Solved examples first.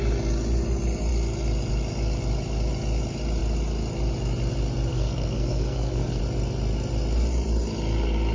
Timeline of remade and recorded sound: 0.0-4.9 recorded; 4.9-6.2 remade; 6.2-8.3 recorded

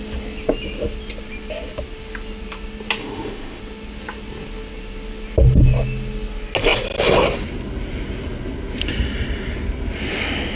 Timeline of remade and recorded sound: 0.0-3.0 recorded; 3.0-3.6 remade; 3.6-10.6 recorded

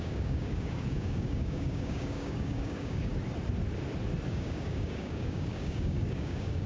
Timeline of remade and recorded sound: 0.0-3.1 remade; 3.1-4.3 recorded; 4.3-6.7 remade